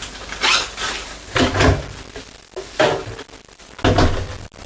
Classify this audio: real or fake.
real